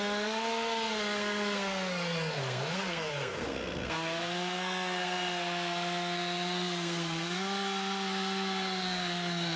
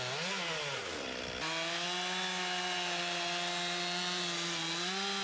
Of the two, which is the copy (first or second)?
first